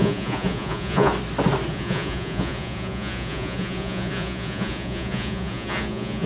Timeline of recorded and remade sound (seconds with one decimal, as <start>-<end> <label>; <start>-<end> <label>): 0.0-1.1 remade; 1.1-1.7 recorded; 1.7-6.3 remade